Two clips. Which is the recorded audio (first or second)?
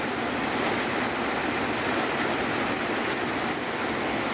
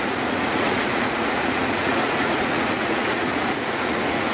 first